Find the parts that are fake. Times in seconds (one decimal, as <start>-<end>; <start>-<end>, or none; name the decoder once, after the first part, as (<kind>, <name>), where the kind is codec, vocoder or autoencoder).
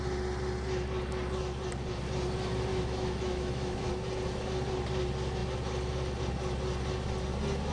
2.7-3.9 (autoencoder, DAC-VAE)